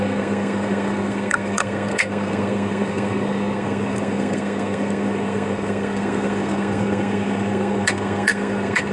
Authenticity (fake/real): fake